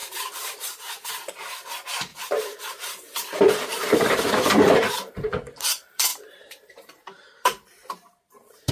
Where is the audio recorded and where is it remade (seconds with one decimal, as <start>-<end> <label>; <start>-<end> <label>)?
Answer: 0.0-1.1 remade; 1.1-2.1 recorded; 2.1-5.1 remade; 5.1-6.1 recorded; 6.1-8.7 remade